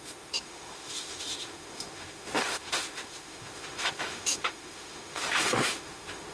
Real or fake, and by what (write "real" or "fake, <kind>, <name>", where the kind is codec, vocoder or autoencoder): fake, autoencoder, DAC-VAE